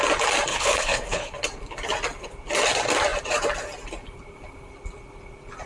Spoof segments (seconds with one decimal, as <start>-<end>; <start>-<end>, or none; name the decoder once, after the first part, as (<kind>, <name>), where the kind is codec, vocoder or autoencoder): 0.5-1.3 (codec, HILCodec)